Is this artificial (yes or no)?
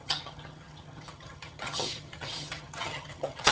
yes